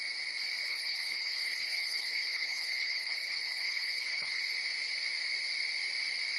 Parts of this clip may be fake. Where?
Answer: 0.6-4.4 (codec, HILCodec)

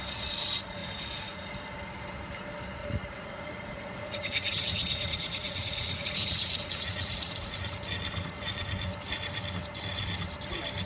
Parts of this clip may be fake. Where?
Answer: 0.8-1.5 (vocoder, Vocos); 2.8-7.7

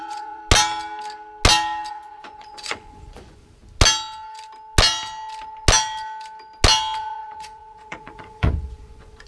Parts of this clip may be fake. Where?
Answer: 0.0-0.4 (vocoder, Vocos); 1.9-3.6; 7.0-9.3

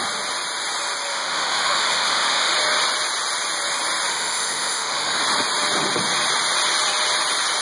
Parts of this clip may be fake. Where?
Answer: 1.1-2.5 (autoencoder, DAC-VAE); 4.1-5.2

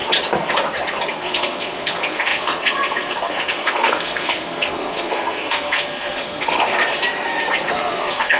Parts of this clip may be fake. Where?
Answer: 1.1-6.8 (codec, SNAC); 7.7-8.4

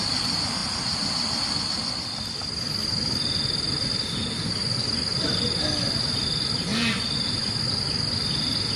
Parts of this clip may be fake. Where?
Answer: 0.6-1.6 (vocoder, BigVGAN v2)

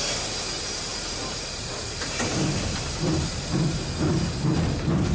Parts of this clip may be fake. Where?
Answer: 0.9-3.4 (vocoder, BigVGAN v2)

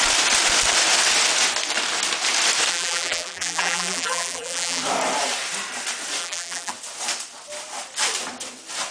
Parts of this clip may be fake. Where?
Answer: 2.7-4.8 (vocoder, BigVGAN v2); 6.2-6.7